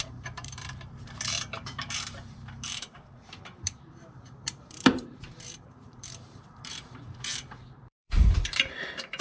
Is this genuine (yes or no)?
no